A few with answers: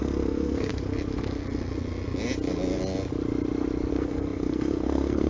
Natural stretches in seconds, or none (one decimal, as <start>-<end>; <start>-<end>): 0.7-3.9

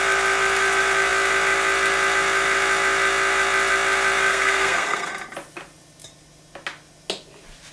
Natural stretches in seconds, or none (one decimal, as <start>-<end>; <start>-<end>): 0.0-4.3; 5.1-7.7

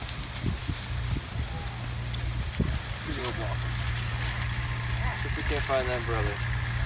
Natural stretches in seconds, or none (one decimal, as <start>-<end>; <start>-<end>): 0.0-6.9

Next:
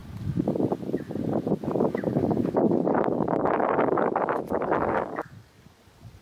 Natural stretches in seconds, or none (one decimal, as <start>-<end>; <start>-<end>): 0.0-2.1; 5.8-6.2

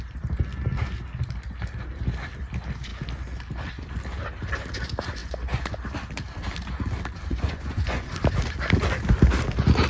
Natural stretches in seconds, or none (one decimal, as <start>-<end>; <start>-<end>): 0.0-5.2; 5.7-7.3; 8.1-9.9